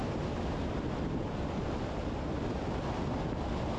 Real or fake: real